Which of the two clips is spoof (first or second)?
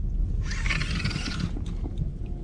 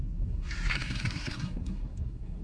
second